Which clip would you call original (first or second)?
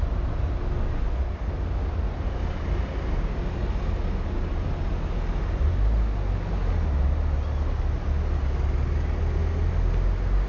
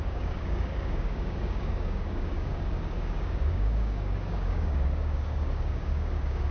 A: first